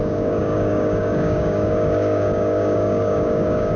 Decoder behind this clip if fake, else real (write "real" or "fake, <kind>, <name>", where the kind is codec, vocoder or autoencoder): fake, codec, DAC